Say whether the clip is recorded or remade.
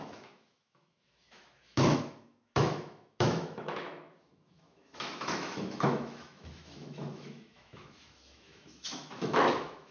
remade